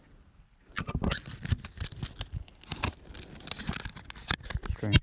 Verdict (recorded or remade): recorded